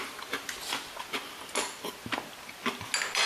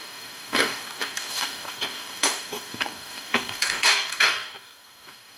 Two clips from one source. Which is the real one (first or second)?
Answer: first